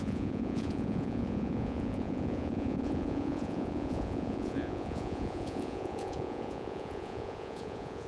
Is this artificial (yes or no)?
yes